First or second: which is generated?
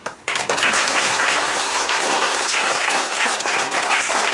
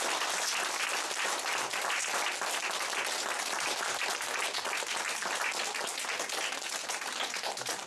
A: first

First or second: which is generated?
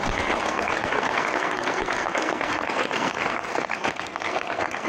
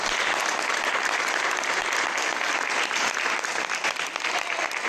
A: first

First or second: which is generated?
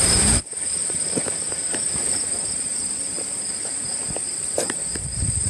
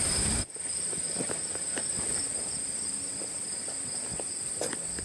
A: first